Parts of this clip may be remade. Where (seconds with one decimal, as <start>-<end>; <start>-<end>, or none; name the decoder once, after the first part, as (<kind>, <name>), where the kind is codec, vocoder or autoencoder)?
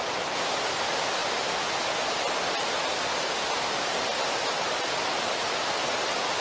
none